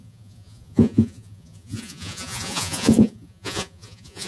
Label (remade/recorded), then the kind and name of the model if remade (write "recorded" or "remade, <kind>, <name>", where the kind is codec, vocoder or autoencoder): remade, vocoder, Vocos